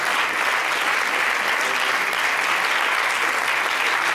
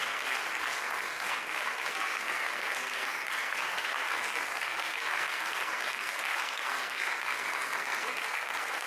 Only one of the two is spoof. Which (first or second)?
second